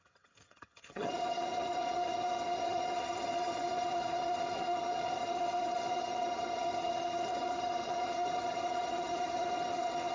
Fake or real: fake